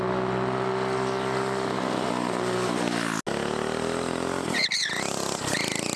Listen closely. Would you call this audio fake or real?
real